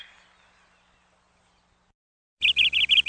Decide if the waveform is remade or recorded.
recorded